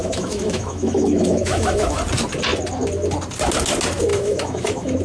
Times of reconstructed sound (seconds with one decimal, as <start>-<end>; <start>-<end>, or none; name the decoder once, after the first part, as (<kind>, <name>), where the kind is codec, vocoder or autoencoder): 0.0-2.0 (autoencoder, DAC-VAE); 4.1-5.0